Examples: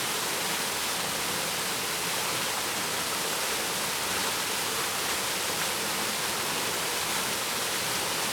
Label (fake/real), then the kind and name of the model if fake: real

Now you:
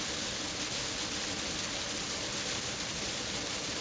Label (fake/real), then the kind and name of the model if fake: real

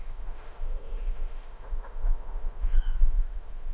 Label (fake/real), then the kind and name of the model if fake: fake, autoencoder, DAC-VAE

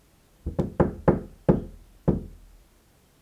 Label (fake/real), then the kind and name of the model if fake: real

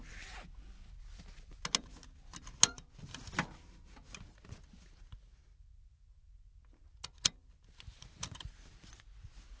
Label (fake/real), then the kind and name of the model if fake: real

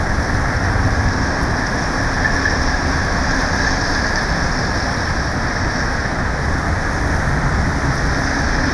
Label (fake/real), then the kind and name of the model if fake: real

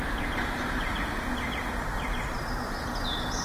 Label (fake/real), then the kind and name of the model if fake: real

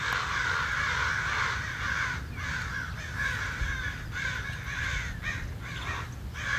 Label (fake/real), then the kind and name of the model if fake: real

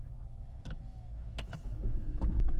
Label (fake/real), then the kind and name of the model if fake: fake, autoencoder, DAC-VAE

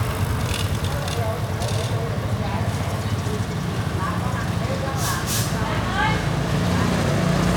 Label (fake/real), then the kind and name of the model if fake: real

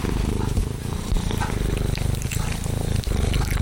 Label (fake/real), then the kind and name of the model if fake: real